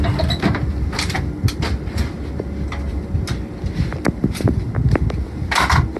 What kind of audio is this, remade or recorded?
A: recorded